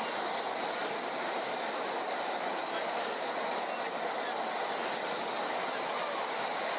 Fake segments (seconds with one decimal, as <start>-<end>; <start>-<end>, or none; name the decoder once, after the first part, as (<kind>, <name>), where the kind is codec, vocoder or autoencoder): none